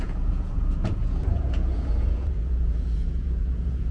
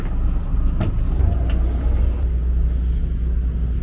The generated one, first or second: first